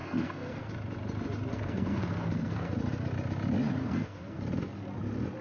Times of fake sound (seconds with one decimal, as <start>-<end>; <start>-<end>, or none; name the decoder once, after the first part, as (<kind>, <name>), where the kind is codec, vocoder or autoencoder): 0.0-0.7 (codec, SNAC); 1.5-2.7; 3.8-4.4